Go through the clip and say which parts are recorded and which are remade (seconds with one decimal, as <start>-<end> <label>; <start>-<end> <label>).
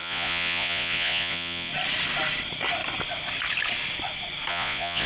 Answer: 0.0-1.7 remade; 1.7-4.5 recorded; 4.5-5.1 remade